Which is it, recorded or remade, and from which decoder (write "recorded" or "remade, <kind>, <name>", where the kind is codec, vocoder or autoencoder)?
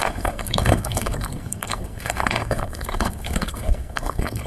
remade, codec, SNAC